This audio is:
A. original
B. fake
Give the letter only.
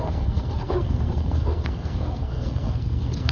B